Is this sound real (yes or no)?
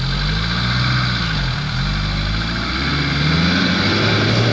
yes